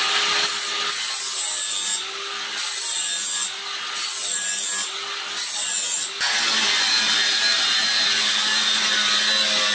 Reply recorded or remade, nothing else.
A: recorded